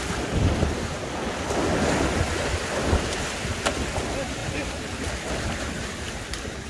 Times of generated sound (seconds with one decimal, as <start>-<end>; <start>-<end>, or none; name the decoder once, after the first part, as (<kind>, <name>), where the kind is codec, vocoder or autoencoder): none